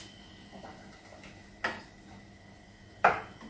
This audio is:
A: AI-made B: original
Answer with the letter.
B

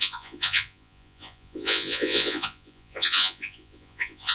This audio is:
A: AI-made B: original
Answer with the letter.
A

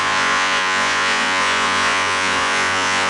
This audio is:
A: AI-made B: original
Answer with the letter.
A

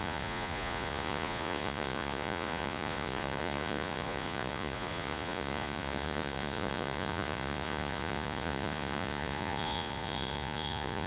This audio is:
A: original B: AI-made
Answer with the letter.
B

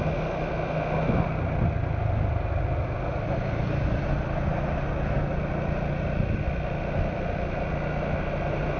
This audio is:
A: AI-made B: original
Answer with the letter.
B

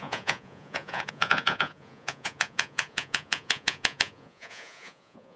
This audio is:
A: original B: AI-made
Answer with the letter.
B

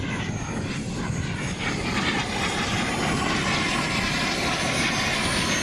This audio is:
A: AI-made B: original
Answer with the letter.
B